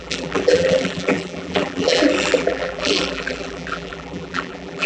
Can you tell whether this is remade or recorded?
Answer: remade